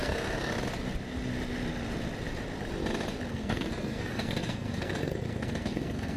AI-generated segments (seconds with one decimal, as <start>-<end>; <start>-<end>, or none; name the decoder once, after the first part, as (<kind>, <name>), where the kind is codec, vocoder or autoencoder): 0.0-0.5 (codec, SNAC); 3.3-6.2